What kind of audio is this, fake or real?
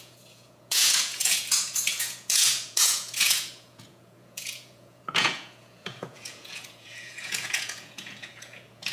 fake